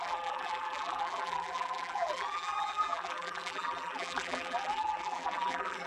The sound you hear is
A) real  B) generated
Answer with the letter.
B